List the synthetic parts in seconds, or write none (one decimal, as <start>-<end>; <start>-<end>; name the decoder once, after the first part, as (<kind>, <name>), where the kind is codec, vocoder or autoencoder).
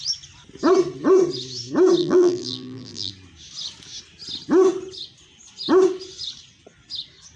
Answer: 2.0-3.1 (vocoder, BigVGAN v2)